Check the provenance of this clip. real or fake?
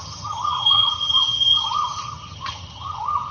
fake